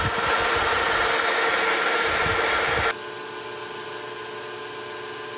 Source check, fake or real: real